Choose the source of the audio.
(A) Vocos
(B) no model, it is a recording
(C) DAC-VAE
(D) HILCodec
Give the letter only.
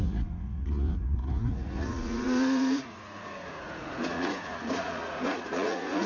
A